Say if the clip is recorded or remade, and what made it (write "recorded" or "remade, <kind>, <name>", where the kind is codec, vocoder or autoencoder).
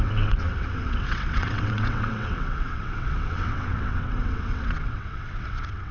remade, vocoder, WaveNeXt